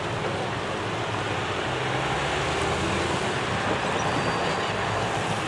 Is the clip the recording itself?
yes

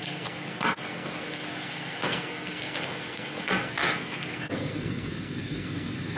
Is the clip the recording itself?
no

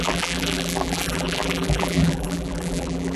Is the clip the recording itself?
no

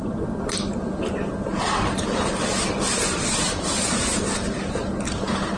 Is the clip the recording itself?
yes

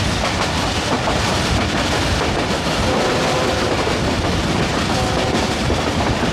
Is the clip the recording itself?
no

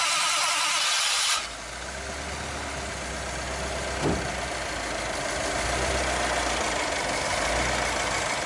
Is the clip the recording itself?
yes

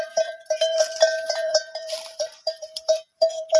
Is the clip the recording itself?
no